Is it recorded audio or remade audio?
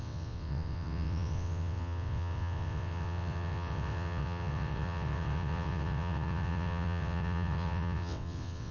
remade